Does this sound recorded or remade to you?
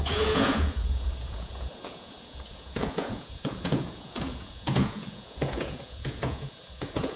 remade